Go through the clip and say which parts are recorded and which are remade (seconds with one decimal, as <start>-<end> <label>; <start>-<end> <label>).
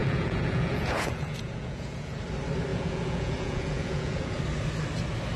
0.0-2.2 remade; 2.2-2.7 recorded; 2.7-4.4 remade; 4.4-5.4 recorded